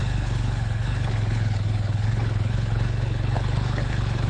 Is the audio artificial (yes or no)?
yes